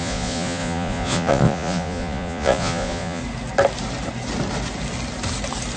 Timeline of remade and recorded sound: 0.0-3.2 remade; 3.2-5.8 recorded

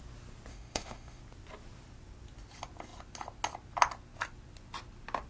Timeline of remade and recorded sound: 0.0-0.5 recorded; 0.5-1.2 remade; 1.2-5.3 recorded